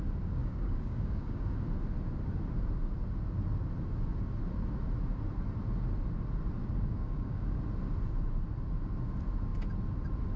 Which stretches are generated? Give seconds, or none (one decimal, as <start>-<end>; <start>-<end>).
0.4-1.5; 6.6-7.6